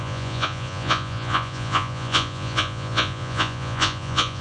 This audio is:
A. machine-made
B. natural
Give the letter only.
A